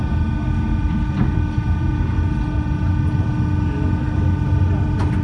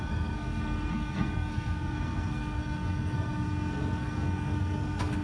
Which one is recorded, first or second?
first